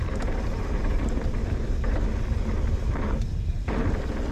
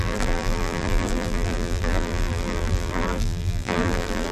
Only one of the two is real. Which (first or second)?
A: first